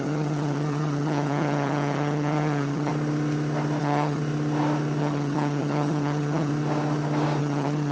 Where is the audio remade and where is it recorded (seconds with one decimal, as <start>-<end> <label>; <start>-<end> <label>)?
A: 0.0-2.9 remade; 2.9-3.8 recorded; 3.8-4.2 remade; 4.2-5.0 recorded; 5.0-6.5 remade; 6.5-7.4 recorded; 7.4-7.9 remade